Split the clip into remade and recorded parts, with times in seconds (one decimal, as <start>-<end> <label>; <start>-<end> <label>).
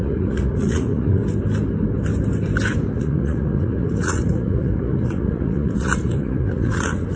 0.0-1.2 remade; 1.2-2.9 recorded; 2.9-7.2 remade